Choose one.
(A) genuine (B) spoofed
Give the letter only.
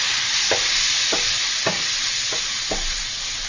A